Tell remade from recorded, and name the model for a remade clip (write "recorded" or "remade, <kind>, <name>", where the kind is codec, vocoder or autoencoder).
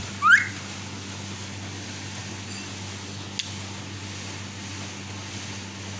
recorded